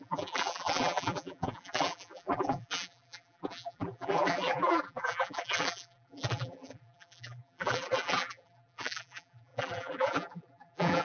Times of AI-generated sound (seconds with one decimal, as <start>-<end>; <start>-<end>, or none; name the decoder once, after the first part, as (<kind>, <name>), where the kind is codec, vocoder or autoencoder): 0.0-11.0 (vocoder, BigVGAN v2)